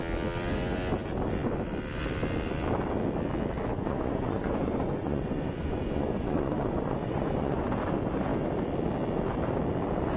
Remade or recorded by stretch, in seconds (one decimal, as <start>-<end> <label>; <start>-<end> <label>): 0.0-3.7 recorded; 3.7-7.7 remade; 7.7-10.2 recorded